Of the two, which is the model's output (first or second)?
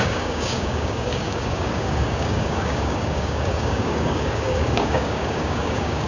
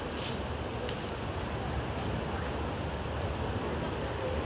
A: first